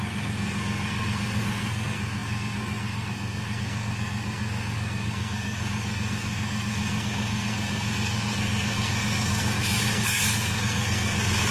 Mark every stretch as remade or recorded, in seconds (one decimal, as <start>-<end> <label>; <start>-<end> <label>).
0.0-11.5 remade